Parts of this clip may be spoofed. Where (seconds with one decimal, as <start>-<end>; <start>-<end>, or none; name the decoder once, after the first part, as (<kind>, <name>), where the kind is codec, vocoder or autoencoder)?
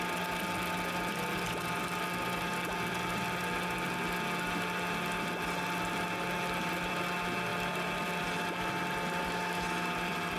none